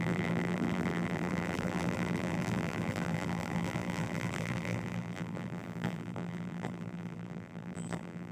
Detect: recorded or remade remade